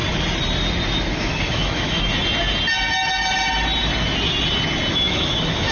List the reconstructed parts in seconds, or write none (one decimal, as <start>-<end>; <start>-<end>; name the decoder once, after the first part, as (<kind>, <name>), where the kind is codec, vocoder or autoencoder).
1.1-2.1 (autoencoder, DAC-VAE); 4.9-5.7